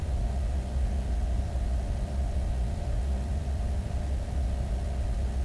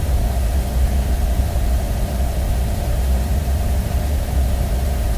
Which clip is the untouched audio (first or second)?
first